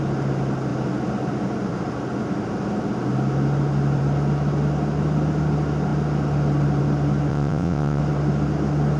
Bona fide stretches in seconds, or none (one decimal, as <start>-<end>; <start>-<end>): 0.0-7.3; 8.0-9.0